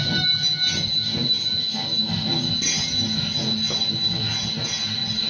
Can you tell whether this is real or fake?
real